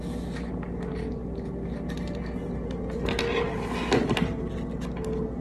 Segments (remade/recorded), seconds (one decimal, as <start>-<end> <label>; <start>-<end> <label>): 0.0-5.4 recorded